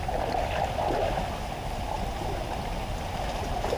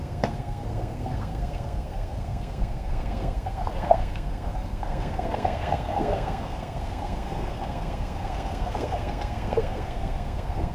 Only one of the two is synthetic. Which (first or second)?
second